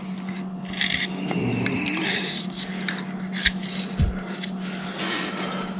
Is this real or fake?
real